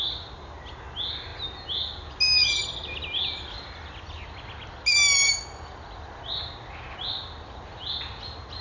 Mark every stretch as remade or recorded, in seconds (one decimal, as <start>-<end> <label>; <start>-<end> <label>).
0.0-8.6 recorded